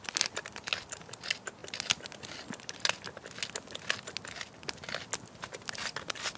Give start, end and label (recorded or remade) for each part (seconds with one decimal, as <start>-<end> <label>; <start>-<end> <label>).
0.0-6.4 recorded